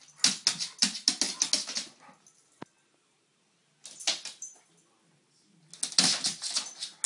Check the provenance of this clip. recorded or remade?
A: recorded